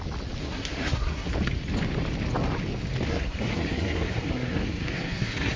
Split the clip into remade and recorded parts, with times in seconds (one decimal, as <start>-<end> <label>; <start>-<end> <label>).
0.0-0.4 recorded; 0.4-1.3 remade; 1.3-3.1 recorded; 3.1-5.6 remade